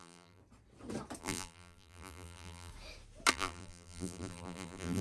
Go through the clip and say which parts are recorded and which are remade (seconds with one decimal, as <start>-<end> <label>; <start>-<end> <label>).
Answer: 0.0-0.4 remade; 0.4-1.2 recorded; 1.2-2.7 remade; 2.7-3.3 recorded; 3.3-5.0 remade